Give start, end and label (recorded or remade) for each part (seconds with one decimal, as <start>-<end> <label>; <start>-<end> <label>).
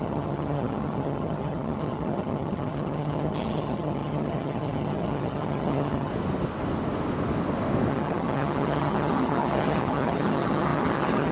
0.0-6.1 remade; 6.1-7.9 recorded; 7.9-11.3 remade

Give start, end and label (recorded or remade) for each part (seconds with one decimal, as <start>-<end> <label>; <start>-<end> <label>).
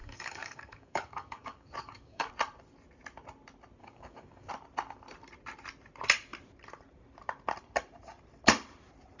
0.0-2.3 remade; 2.3-3.8 recorded; 3.8-4.5 remade; 4.5-9.2 recorded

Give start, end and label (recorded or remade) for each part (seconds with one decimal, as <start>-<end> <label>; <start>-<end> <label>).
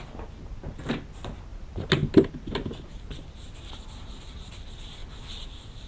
0.0-5.9 recorded